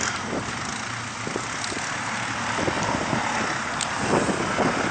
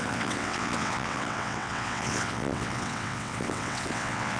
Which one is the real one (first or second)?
first